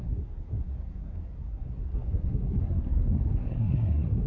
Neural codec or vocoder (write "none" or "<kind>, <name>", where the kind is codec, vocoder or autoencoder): codec, SNAC